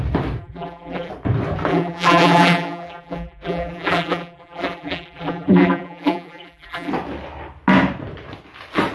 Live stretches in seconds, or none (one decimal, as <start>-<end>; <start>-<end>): 0.0-0.4; 1.1-1.7; 6.9-8.9

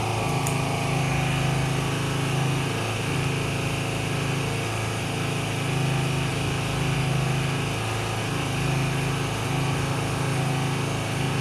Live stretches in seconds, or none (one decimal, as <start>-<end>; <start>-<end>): 0.0-11.4

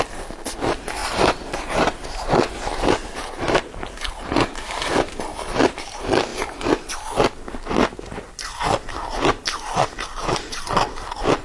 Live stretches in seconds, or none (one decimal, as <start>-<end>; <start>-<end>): 0.0-1.0; 2.5-3.0; 4.1-11.4

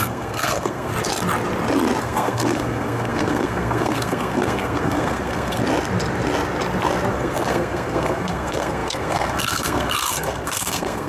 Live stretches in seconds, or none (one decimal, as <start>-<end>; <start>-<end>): 0.9-2.0; 5.6-7.1

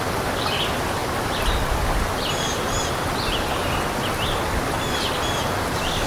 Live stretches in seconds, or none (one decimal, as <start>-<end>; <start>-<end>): 0.0-6.1